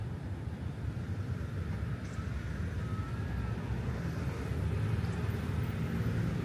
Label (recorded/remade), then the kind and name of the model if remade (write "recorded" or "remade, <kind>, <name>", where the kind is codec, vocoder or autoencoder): recorded